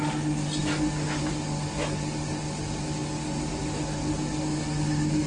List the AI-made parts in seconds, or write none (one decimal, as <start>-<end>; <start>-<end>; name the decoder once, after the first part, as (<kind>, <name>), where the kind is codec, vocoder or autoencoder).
none